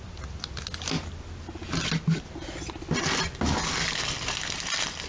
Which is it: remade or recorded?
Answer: recorded